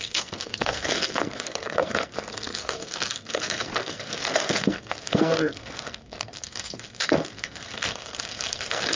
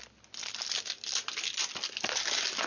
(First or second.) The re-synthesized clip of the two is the first